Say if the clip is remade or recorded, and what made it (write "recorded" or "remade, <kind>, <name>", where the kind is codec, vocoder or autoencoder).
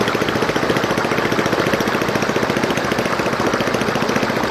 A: recorded